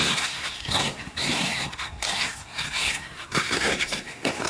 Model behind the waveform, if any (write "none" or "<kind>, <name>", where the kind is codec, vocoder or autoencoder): codec, SNAC